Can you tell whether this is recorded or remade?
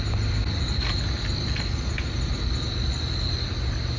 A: recorded